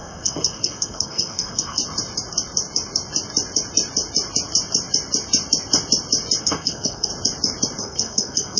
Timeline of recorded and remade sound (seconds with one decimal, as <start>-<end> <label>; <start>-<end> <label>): 0.0-1.8 remade; 1.8-6.4 recorded; 6.4-7.1 remade; 7.1-7.8 recorded; 7.8-8.6 remade